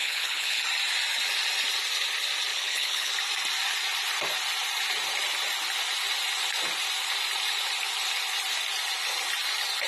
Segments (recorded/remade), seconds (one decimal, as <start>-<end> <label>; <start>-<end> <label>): 0.0-0.6 remade; 0.6-2.5 recorded; 2.5-3.1 remade; 3.1-9.9 recorded